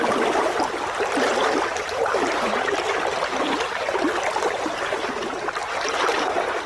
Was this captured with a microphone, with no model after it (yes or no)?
no